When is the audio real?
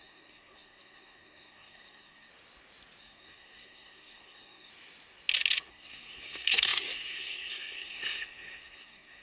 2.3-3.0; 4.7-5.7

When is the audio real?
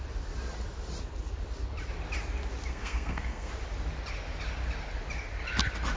0.0-2.7; 3.5-6.0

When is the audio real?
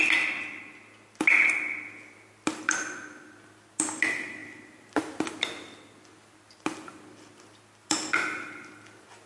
0.0-9.3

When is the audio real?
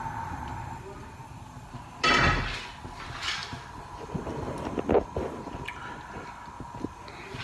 0.0-7.4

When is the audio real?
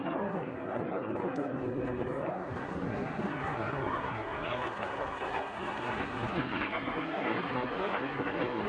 none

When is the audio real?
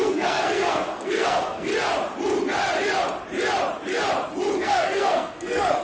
1.7-4.6